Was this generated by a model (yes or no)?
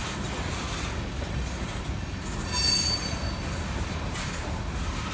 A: no